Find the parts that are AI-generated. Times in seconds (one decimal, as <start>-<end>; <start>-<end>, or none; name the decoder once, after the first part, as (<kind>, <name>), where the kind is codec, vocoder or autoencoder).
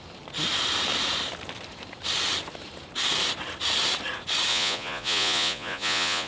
4.5-6.3 (vocoder, Vocos)